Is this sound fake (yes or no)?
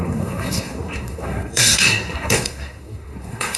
yes